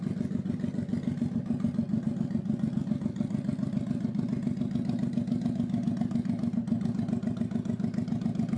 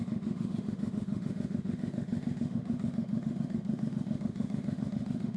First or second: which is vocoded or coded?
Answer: second